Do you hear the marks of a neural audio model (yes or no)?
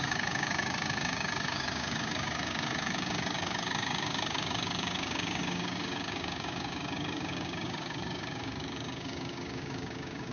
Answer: yes